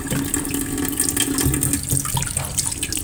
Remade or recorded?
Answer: recorded